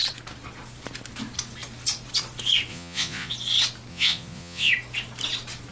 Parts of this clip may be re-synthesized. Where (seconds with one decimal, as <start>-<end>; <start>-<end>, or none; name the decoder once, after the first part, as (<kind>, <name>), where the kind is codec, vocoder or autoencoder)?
2.7-3.3 (vocoder, Vocos); 3.9-4.7